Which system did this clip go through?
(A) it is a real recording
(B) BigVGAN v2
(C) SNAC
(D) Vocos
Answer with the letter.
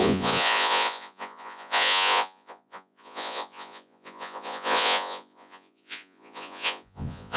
D